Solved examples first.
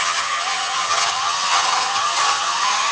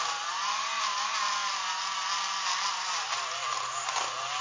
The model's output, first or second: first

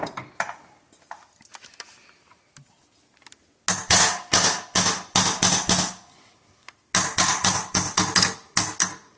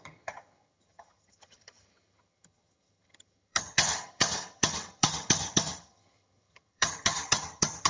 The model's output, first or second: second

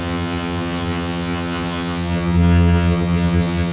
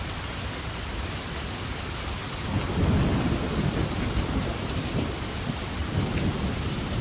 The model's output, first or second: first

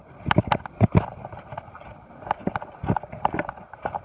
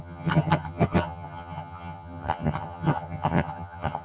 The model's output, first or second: second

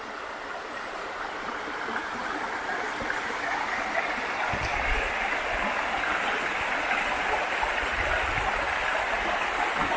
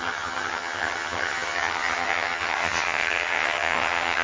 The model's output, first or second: second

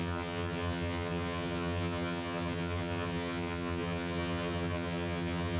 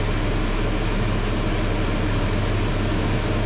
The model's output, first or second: first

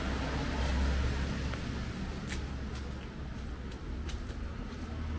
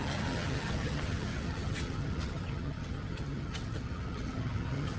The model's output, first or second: second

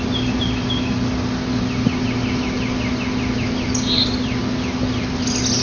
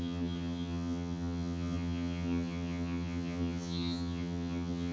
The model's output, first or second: second